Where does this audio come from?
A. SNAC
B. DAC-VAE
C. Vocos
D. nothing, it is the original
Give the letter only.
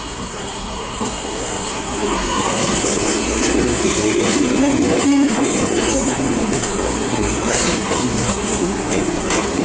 A